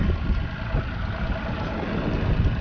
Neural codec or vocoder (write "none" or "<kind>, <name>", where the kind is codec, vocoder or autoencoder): none